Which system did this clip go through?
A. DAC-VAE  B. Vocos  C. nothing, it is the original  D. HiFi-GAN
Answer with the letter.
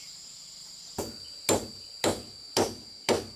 C